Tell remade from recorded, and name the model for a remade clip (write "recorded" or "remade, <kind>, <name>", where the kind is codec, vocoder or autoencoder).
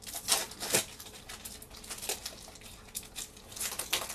recorded